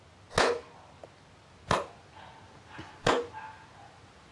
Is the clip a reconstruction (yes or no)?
no